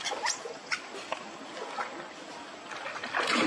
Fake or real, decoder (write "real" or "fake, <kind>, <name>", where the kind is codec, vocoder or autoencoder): real